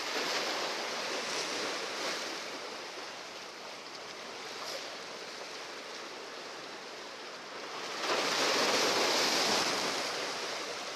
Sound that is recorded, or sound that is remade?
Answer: recorded